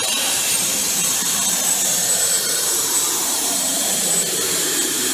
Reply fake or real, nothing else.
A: fake